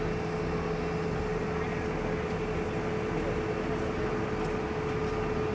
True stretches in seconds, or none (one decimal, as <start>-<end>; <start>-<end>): 0.0-5.5